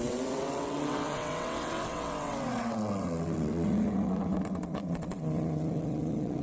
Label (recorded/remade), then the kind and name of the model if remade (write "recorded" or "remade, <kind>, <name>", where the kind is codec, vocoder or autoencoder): remade, vocoder, WaveNeXt